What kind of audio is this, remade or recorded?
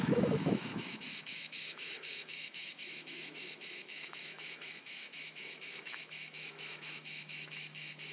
remade